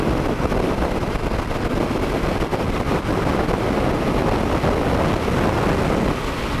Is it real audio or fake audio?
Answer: real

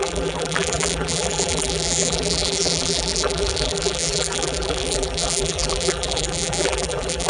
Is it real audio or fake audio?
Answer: fake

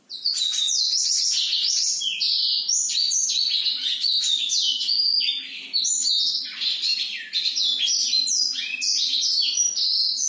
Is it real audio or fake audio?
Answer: real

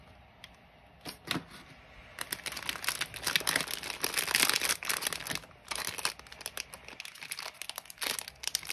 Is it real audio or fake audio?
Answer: real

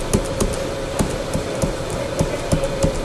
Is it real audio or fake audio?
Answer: real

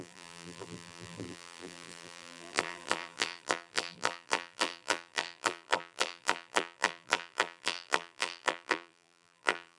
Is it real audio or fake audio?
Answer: fake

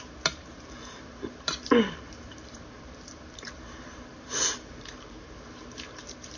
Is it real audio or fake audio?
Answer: fake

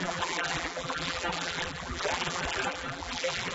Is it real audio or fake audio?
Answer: fake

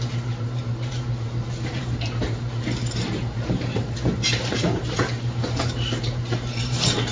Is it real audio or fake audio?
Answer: fake